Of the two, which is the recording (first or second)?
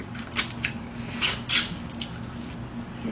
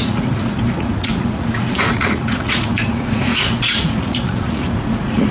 first